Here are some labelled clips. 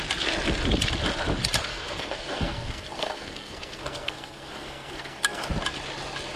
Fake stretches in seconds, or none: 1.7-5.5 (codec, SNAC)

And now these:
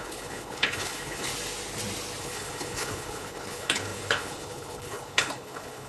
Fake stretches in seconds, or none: 0.0-1.3 (codec, HILCodec); 2.2-5.9

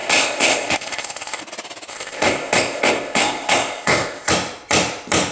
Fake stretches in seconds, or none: 0.0-1.4 (codec, ZipCodec); 1.9-4.3

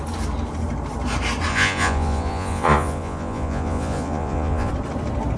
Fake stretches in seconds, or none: 1.5-4.7 (vocoder, Vocos)